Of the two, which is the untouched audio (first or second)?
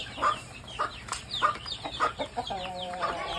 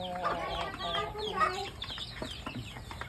second